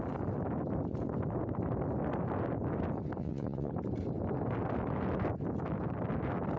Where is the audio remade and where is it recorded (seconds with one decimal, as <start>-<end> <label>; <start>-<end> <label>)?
0.0-3.2 recorded; 3.2-3.7 remade; 3.7-6.6 recorded